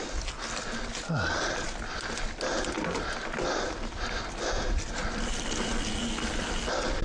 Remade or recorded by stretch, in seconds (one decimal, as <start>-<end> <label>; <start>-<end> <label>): 0.0-5.0 recorded; 5.0-7.0 remade